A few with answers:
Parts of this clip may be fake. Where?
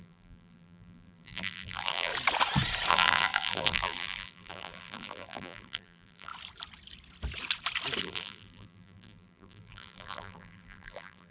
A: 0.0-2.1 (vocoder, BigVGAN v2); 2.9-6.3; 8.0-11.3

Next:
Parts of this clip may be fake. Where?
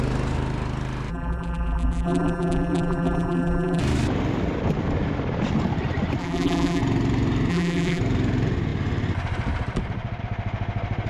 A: 1.1-3.8 (vocoder, BigVGAN v2); 6.2-6.8; 7.5-8.0